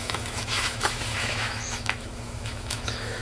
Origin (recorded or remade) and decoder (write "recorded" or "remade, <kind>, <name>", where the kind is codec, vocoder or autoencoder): remade, autoencoder, DAC-VAE